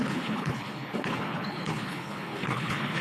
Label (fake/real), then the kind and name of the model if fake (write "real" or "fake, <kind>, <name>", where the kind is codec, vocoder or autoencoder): fake, codec, HILCodec